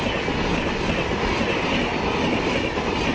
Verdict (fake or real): real